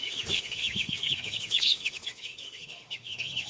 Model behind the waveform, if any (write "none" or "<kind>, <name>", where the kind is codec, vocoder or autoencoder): autoencoder, DAC-VAE